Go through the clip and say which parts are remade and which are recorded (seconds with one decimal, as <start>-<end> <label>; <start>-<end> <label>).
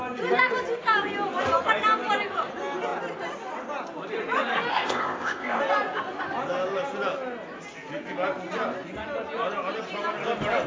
0.0-4.7 recorded; 4.7-5.6 remade; 5.6-10.7 recorded